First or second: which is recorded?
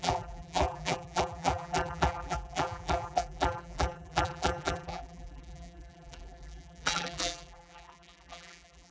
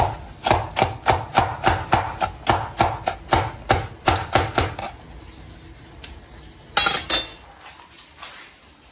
second